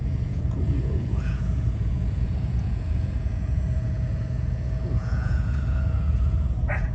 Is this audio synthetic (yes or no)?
yes